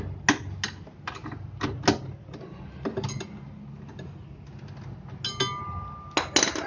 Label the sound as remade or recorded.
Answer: recorded